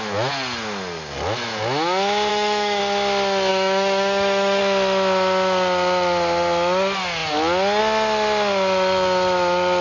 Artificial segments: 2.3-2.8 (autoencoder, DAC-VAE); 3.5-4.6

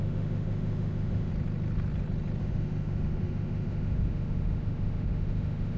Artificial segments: 0.0-1.3 (autoencoder, DAC-VAE); 2.4-5.8

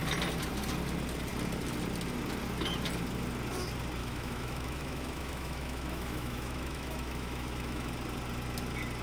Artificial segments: 4.0-7.9 (autoencoder, DAC-VAE)

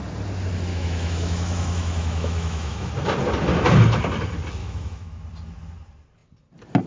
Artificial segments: 0.7-2.9 (autoencoder, DAC-VAE); 4.6-5.2

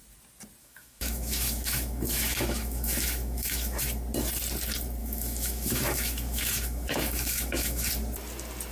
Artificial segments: 0.6-3.8 (autoencoder, DAC-VAE); 5.0-7.9

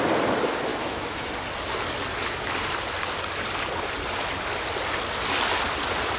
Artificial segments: 0.7-1.3 (autoencoder, DAC-VAE)

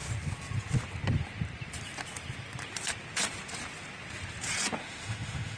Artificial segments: 4.8-5.6 (autoencoder, DAC-VAE)

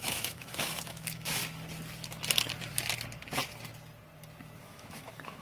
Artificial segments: 0.0-1.4 (autoencoder, DAC-VAE); 4.6-5.4